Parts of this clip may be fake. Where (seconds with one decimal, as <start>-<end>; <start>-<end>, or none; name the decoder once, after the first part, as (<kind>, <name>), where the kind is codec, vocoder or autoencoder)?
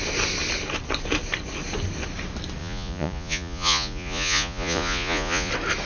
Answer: 2.6-5.5 (vocoder, Vocos)